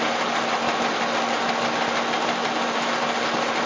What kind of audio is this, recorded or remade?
recorded